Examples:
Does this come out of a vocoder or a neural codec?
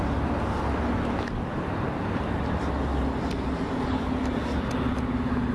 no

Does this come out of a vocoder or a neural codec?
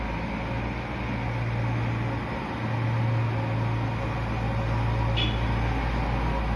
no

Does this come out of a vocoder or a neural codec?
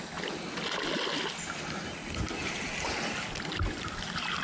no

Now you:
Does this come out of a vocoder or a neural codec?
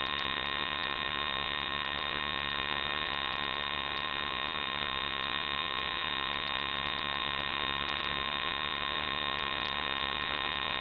yes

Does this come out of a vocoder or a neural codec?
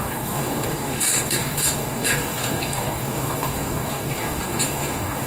yes